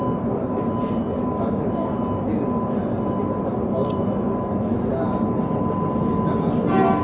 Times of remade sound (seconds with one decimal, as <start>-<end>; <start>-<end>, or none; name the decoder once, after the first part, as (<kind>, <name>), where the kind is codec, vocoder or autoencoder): none